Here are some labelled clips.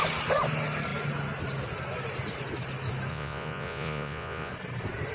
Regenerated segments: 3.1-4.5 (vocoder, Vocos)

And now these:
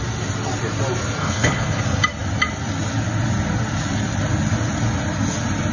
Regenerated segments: 1.2-1.8 (codec, HILCodec)

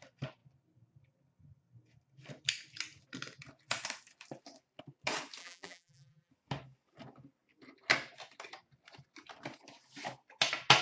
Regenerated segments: 5.4-6.3 (vocoder, BigVGAN v2)

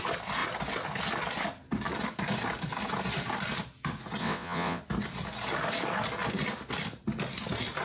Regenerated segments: 4.2-4.8 (vocoder, WaveNeXt)

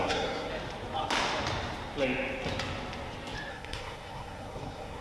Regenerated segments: 0.0-0.5 (codec, SNAC); 3.5-5.0

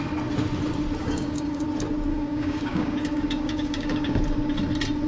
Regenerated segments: 1.0-1.6 (codec, DAC); 2.1-4.2

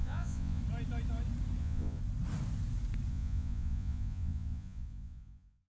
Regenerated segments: 0.0-0.6 (vocoder, Vocos); 1.6-2.0; 3.1-5.7